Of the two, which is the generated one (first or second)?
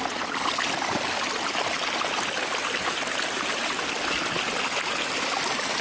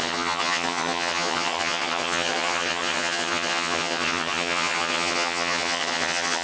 second